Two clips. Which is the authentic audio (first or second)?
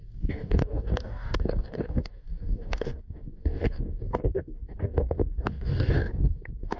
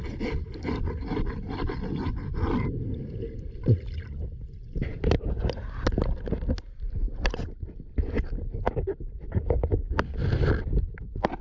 second